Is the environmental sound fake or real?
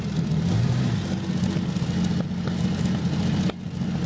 real